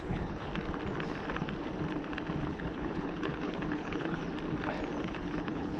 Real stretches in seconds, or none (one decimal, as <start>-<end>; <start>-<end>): 0.5-2.4; 4.2-5.0

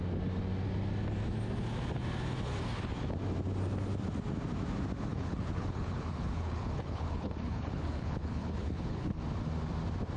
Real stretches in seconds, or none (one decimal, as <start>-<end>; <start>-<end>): 0.0-5.1; 9.2-10.2

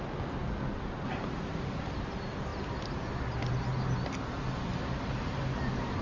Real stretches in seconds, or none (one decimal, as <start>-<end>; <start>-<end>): 0.0-6.0

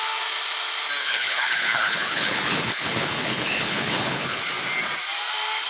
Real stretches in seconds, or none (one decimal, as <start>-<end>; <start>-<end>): 0.0-1.0; 4.4-5.7